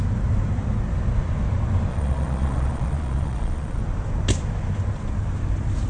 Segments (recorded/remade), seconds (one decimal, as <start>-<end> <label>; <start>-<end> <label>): 0.0-1.9 recorded; 1.9-3.8 remade; 3.8-5.9 recorded